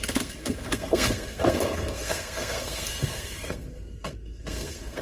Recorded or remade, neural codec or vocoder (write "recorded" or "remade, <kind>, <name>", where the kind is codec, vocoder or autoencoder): remade, codec, SNAC